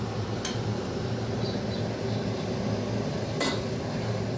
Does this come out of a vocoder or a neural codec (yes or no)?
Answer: no